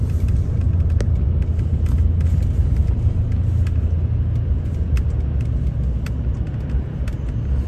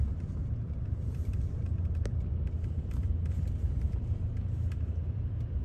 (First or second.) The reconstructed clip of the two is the second